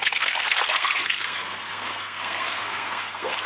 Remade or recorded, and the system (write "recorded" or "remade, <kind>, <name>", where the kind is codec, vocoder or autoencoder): remade, codec, SNAC